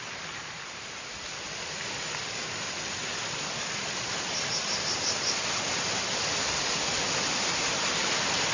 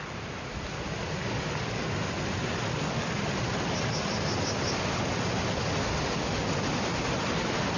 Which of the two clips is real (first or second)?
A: second